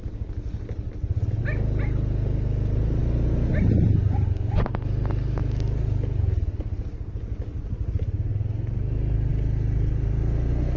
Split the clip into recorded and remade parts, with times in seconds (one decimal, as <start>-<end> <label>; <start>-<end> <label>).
0.0-10.8 recorded